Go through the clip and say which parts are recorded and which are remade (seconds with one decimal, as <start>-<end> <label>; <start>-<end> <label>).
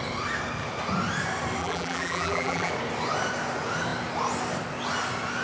0.0-1.6 recorded; 1.6-2.7 remade; 2.7-5.4 recorded